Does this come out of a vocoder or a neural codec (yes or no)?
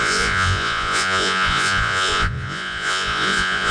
yes